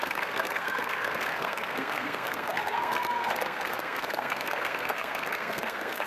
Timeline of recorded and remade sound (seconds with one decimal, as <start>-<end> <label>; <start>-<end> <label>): 0.0-6.1 remade